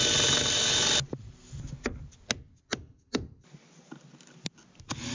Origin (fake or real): real